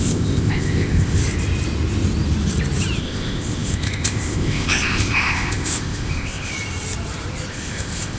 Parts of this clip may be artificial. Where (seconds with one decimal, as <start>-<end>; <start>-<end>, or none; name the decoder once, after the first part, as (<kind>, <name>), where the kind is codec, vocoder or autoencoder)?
0.0-1.2 (codec, ZipCodec); 3.0-6.5; 7.5-8.2